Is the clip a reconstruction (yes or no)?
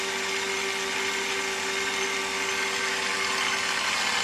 no